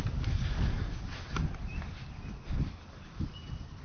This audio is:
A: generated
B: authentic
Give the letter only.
B